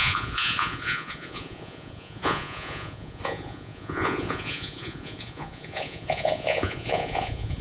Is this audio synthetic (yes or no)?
yes